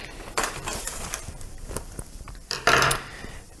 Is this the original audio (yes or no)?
no